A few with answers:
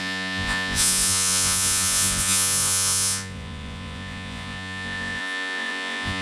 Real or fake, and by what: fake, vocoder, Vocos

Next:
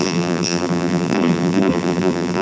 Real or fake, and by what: fake, vocoder, BigVGAN v2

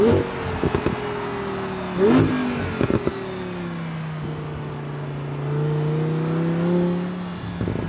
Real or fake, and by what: real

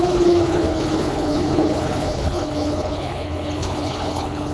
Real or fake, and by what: fake, codec, HILCodec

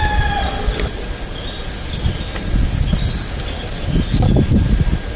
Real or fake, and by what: real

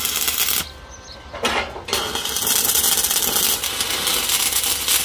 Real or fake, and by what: real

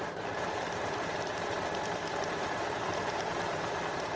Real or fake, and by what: fake, vocoder, BigVGAN v2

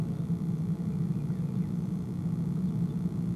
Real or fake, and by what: real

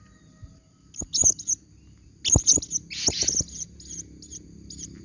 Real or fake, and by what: real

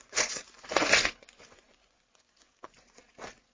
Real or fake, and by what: fake, vocoder, Vocos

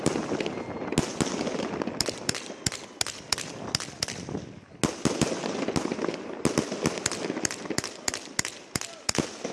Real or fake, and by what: real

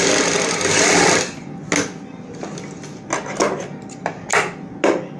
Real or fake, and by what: real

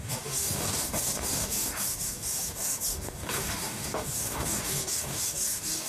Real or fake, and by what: fake, codec, DAC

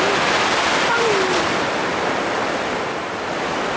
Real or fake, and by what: real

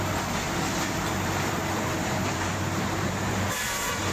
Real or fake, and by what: fake, vocoder, BigVGAN v2